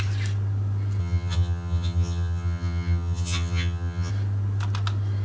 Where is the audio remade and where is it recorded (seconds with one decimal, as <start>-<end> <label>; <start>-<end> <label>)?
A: 0.0-1.0 recorded; 1.0-4.1 remade; 4.1-5.2 recorded